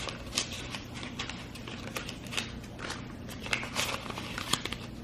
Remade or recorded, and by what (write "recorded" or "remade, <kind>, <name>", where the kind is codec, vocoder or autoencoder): recorded